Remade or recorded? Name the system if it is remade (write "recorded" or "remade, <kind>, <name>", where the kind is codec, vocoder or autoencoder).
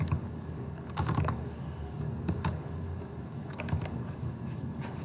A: remade, codec, DAC